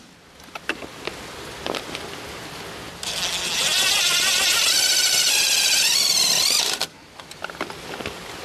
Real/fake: real